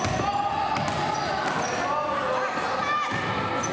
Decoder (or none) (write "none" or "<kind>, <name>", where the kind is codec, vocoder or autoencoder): none